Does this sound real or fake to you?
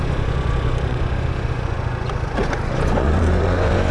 fake